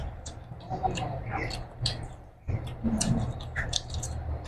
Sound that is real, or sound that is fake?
fake